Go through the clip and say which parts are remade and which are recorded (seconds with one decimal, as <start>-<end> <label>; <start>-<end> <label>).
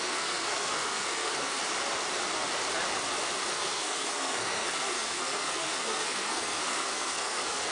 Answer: 0.0-1.6 remade; 1.6-3.5 recorded; 3.5-7.7 remade